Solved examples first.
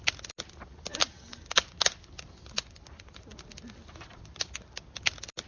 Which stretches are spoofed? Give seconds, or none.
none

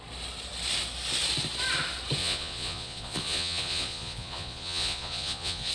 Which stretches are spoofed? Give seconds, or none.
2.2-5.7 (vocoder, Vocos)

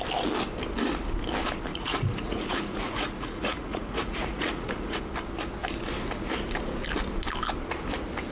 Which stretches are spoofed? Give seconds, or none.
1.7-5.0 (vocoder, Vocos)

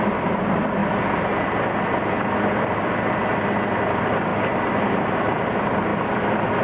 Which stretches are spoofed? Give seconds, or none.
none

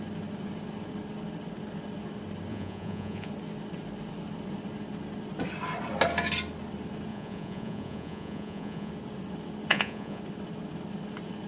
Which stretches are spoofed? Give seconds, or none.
2.5-3.3 (vocoder, Vocos); 7.1-8.9; 9.7-10.2

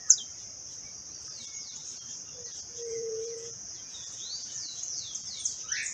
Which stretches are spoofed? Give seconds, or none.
2.7-5.3 (vocoder, Vocos)

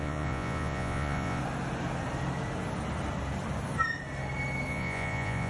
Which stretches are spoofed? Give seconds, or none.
0.0-1.4 (vocoder, Vocos); 4.7-5.5

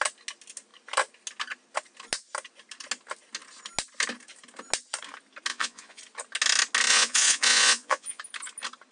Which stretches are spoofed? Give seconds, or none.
5.5-6.0 (vocoder, Vocos); 6.9-8.2